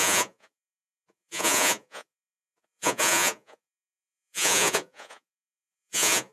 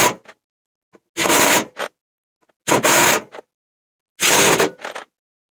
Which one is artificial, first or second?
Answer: first